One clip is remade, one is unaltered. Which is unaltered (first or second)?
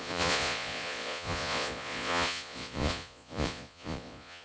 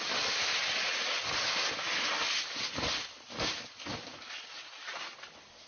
second